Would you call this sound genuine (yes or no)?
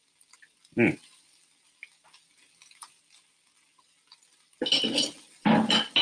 yes